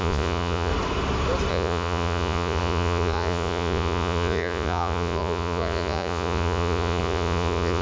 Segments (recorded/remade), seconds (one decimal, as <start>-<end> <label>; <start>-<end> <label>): 0.0-0.7 remade; 0.7-1.5 recorded; 1.5-7.8 remade